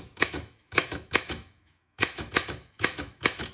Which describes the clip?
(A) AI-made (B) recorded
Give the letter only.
A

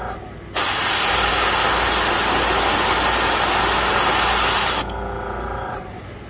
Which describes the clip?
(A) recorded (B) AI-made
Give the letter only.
A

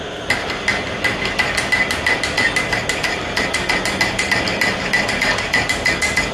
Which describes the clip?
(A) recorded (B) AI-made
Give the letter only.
A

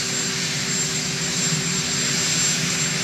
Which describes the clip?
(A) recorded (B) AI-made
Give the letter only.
A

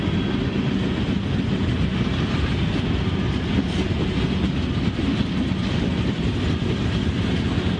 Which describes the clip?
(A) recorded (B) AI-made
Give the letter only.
A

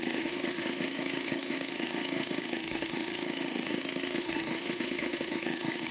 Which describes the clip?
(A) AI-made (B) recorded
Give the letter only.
A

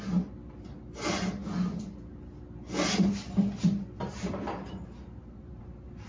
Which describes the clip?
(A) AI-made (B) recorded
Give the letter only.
B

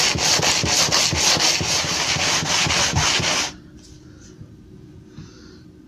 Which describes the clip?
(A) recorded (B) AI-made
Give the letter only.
A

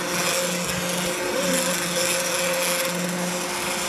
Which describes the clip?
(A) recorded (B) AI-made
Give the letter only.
A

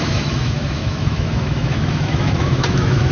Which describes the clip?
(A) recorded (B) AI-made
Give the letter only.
B